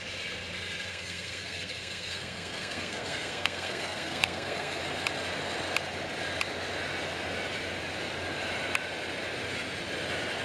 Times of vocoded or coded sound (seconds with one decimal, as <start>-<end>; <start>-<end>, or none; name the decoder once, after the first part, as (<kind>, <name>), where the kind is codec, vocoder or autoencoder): 0.9-4.8 (codec, SNAC)